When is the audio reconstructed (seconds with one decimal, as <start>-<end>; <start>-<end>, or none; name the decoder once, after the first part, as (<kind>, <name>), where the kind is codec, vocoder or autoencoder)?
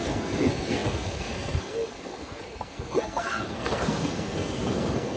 0.0-5.2 (codec, SNAC)